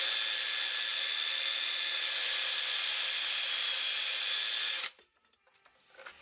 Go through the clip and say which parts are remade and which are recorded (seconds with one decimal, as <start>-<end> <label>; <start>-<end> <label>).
0.0-6.2 recorded